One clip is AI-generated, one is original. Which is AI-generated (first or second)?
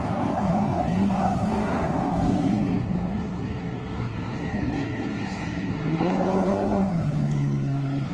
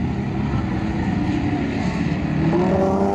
first